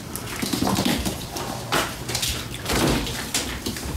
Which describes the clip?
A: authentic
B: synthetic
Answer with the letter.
A